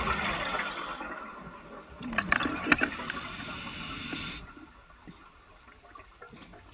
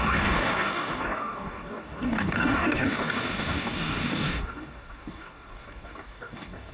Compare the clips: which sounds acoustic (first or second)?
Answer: first